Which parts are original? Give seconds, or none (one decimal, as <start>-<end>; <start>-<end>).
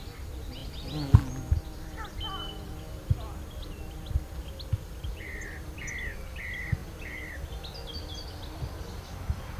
0.0-9.6